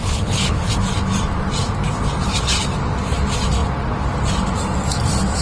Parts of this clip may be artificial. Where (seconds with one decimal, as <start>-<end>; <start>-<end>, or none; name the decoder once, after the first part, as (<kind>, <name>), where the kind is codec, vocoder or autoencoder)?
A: 0.0-0.7 (codec, HILCodec)